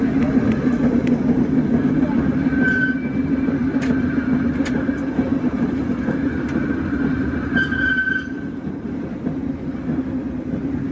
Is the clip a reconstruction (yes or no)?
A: yes